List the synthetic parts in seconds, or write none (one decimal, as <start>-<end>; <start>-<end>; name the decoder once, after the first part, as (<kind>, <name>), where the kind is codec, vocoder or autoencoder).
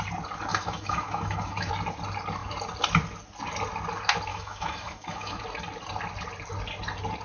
0.5-1.7 (autoencoder, DAC-VAE); 4.3-5.4